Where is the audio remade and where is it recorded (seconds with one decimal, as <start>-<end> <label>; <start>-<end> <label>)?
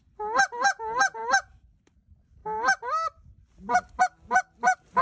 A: 0.0-5.0 recorded